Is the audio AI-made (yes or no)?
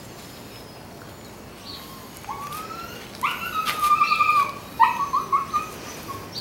no